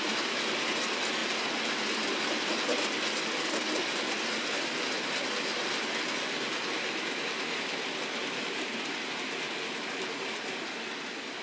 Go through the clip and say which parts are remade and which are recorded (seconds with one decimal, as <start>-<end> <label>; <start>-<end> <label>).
0.0-11.4 recorded